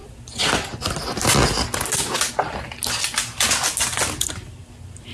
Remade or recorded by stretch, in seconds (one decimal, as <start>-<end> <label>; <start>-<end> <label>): 0.0-5.1 recorded